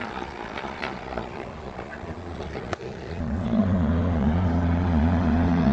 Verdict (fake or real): fake